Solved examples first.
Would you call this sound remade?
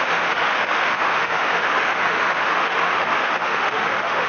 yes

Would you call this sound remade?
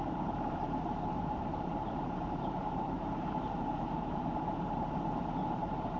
yes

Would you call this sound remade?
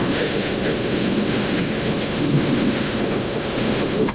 yes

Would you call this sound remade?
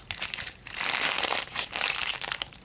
yes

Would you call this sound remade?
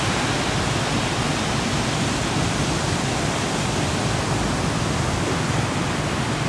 no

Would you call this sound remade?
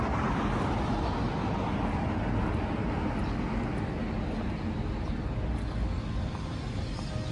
no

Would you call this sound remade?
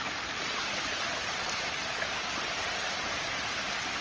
no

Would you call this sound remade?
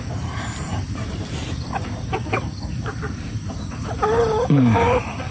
yes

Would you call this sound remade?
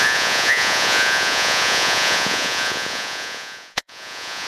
yes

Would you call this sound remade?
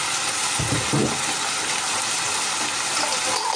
no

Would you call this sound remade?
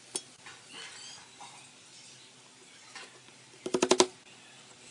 no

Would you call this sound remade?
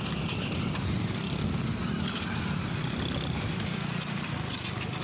no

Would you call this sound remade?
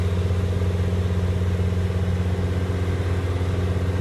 no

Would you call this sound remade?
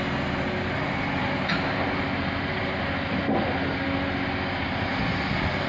no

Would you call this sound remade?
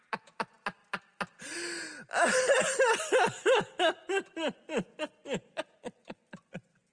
no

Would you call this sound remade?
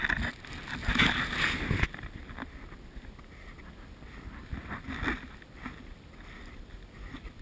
no